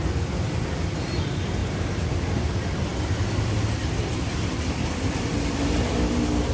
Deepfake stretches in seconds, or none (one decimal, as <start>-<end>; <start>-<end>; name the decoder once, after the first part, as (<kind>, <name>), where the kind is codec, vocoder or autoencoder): none